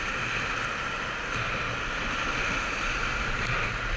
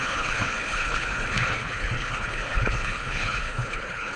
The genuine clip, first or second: first